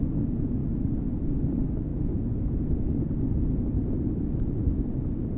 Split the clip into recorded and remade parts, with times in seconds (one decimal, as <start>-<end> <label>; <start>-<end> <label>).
0.0-5.4 recorded